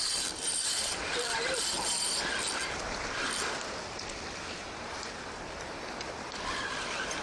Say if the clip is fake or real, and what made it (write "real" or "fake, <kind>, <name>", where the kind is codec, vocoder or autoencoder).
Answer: fake, vocoder, BigVGAN v2